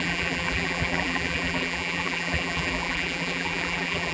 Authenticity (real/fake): fake